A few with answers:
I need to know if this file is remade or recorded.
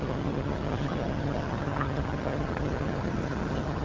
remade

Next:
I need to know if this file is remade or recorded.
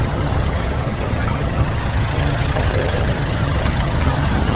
remade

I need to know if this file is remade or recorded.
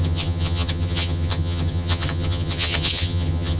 remade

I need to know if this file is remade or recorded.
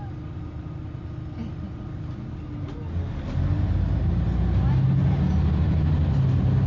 recorded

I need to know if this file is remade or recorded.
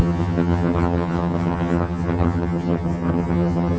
remade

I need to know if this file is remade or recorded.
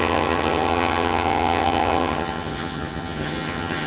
remade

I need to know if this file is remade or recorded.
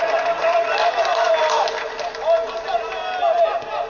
recorded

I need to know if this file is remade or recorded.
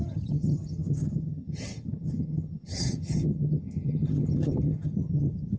remade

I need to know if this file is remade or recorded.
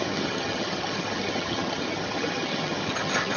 remade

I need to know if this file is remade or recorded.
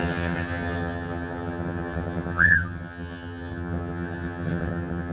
remade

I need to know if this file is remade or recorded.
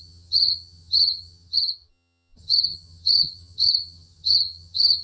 remade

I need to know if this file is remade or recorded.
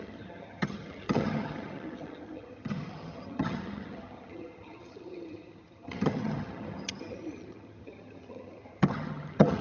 remade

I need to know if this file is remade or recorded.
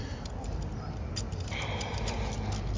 recorded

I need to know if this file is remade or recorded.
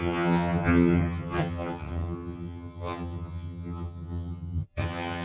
remade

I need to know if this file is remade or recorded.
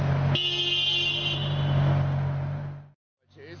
recorded